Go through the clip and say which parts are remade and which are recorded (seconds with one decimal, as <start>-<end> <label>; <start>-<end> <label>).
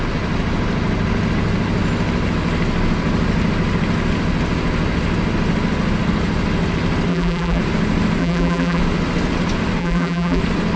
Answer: 0.0-7.1 recorded; 7.1-7.6 remade; 7.6-8.2 recorded; 8.2-8.8 remade; 8.8-9.8 recorded; 9.8-10.4 remade; 10.4-10.8 recorded